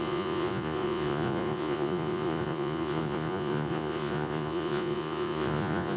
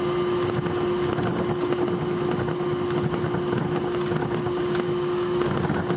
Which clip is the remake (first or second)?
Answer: first